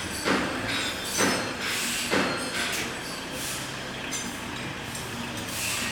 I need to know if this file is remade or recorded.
recorded